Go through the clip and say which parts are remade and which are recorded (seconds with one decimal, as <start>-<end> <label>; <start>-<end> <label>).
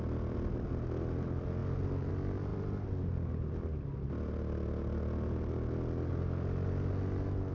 0.0-7.5 recorded